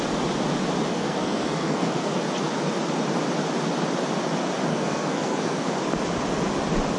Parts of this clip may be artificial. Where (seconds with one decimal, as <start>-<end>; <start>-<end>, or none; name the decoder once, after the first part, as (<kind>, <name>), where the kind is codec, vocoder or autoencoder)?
0.9-2.2 (codec, SNAC); 4.7-5.8